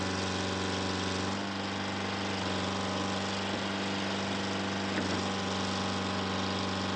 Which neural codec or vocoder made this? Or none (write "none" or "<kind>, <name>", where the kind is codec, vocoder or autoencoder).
none